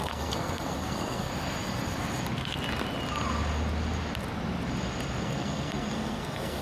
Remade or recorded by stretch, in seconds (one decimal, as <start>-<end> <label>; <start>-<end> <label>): 0.0-1.3 remade; 1.3-5.2 recorded; 5.2-6.6 remade